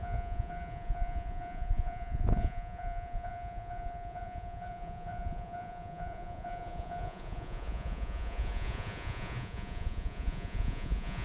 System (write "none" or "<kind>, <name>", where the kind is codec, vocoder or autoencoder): vocoder, Vocos